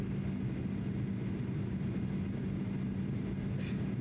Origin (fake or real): real